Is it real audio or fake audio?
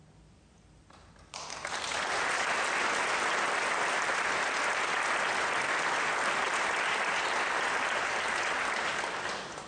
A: real